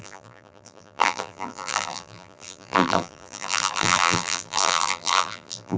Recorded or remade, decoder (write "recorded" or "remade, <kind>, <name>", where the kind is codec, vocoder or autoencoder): remade, vocoder, BigVGAN v2